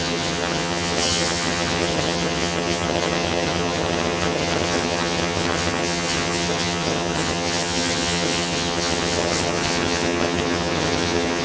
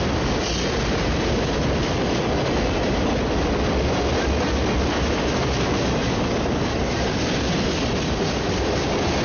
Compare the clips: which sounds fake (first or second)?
first